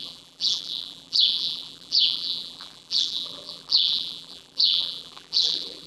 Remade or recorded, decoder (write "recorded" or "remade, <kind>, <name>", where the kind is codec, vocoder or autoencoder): remade, vocoder, BigVGAN v2